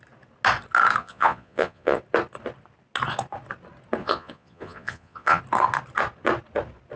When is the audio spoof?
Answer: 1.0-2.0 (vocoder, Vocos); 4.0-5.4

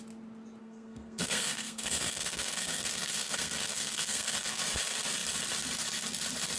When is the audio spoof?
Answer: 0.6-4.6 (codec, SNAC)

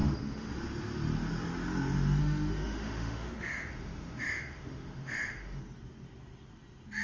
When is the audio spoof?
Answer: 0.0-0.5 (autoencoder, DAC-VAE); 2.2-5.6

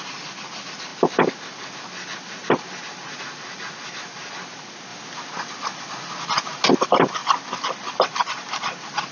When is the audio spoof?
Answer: none

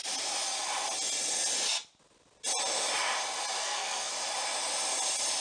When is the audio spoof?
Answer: 3.6-4.1 (codec, SNAC)

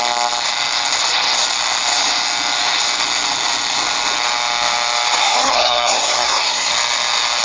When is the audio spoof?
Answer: 5.2-6.7 (codec, SNAC)

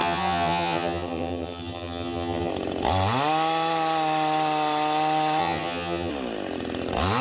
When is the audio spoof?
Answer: 0.0-2.5 (vocoder, HiFi-GAN); 5.4-6.1

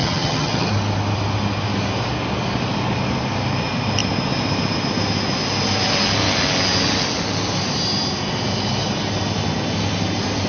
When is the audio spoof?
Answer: 0.0-0.7 (vocoder, HiFi-GAN)